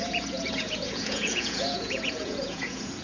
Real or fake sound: fake